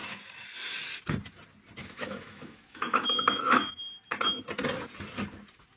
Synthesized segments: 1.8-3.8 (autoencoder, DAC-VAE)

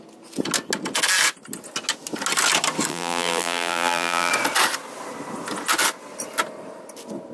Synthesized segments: 2.9-4.3 (vocoder, BigVGAN v2)

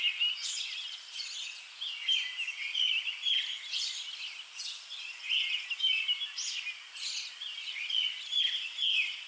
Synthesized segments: none

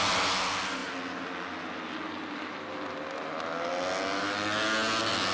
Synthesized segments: none

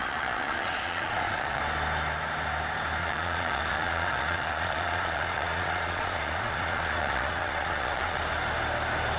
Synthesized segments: 0.0-1.6 (vocoder, Vocos); 3.0-8.2

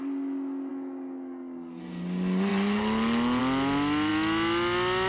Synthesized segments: 0.7-1.8 (codec, DAC)